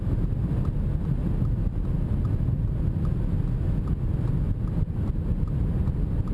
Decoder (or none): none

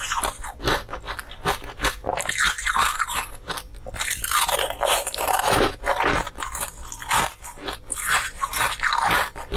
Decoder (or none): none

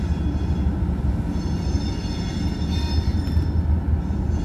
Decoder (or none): none